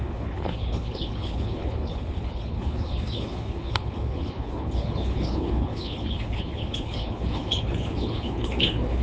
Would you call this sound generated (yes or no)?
yes